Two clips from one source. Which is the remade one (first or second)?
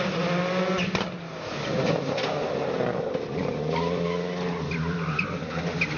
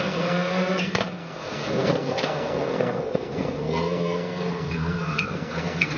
second